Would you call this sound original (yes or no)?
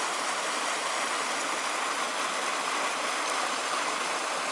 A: yes